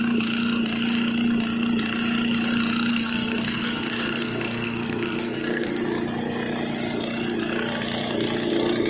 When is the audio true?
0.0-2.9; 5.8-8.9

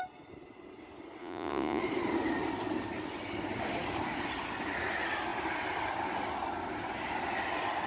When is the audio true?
0.0-1.2; 1.8-7.9

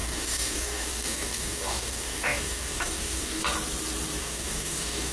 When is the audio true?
3.4-4.2

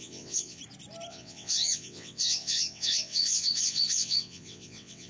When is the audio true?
0.6-1.1